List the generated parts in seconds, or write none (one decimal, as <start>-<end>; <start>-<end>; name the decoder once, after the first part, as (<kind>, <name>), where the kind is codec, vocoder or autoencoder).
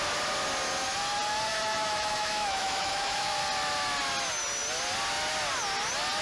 1.5-3.4 (autoencoder, DAC-VAE)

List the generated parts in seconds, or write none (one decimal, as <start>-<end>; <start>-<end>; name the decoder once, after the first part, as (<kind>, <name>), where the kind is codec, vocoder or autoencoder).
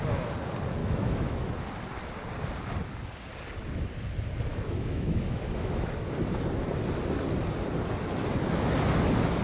0.8-1.5 (autoencoder, DAC-VAE); 4.5-5.9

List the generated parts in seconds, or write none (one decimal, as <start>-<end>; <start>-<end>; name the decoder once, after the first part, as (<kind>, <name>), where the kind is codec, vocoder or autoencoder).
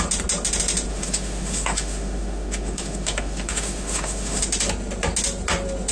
0.9-4.4 (autoencoder, DAC-VAE)